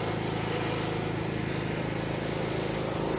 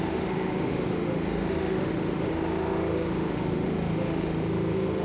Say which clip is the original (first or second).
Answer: first